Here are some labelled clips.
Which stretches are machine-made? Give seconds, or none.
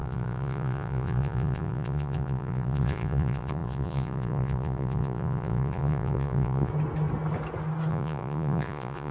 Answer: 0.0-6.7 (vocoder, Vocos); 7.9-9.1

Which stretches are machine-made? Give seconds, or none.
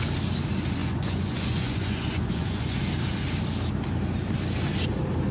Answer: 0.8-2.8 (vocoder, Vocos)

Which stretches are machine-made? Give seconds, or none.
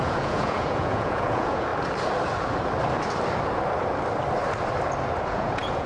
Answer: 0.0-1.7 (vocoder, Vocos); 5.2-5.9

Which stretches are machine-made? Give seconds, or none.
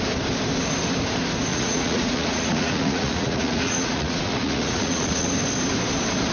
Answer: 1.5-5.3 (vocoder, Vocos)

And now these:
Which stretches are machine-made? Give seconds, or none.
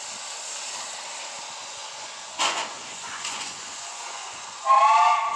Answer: 1.6-4.8 (vocoder, Vocos)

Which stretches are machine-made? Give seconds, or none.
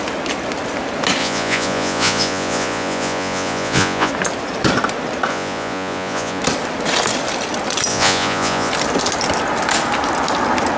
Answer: 1.2-4.1 (vocoder, Vocos); 5.3-6.4; 7.9-8.7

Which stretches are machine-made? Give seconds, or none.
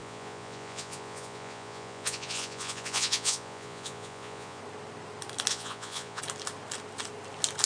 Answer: 0.0-4.6 (vocoder, Vocos); 5.5-6.2